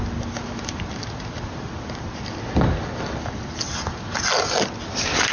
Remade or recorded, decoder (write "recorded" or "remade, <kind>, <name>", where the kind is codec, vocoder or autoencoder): recorded